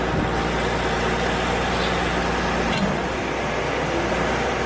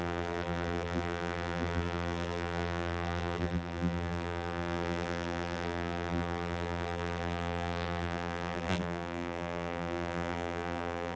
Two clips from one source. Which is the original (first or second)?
first